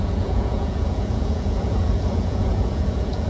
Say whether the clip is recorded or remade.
remade